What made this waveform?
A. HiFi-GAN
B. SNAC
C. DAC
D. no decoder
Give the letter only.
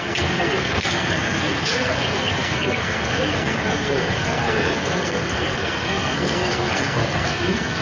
B